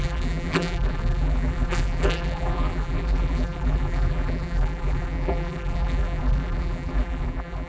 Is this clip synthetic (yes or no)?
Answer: yes